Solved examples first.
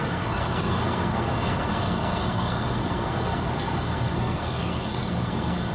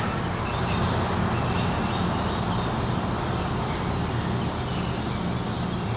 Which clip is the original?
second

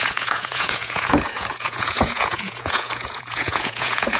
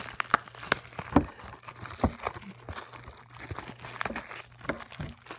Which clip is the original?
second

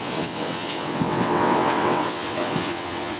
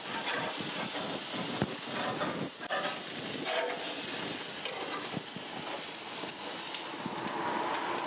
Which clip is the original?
second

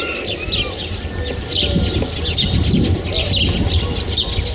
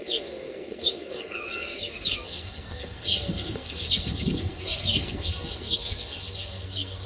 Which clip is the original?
first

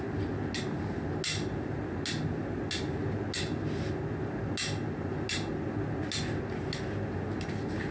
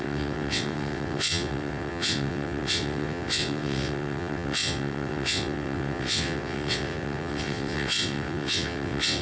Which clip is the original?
first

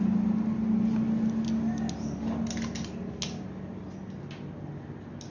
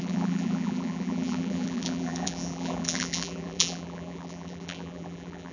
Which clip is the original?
first